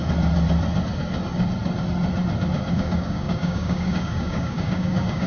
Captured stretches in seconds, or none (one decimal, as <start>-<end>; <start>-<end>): 0.0-2.7